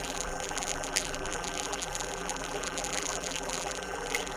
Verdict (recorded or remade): remade